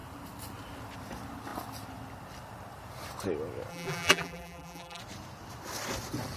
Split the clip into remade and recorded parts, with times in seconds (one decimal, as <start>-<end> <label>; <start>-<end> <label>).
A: 0.0-3.7 recorded; 3.7-5.0 remade; 5.0-6.4 recorded